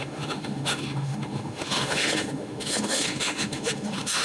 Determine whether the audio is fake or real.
fake